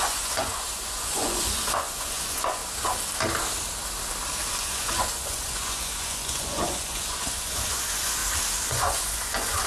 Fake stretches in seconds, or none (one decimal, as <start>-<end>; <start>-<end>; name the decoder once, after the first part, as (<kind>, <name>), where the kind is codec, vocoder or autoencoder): 0.0-2.6 (vocoder, Vocos); 4.6-8.2; 8.7-9.7